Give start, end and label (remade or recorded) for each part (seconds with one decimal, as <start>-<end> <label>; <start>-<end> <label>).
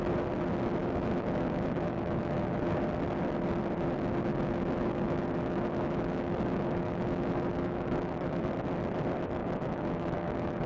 0.0-0.8 recorded; 0.8-2.6 remade; 2.6-4.3 recorded; 4.3-8.5 remade; 8.5-9.4 recorded; 9.4-10.7 remade